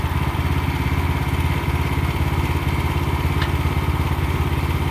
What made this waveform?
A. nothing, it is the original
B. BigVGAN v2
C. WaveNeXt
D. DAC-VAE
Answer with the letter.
A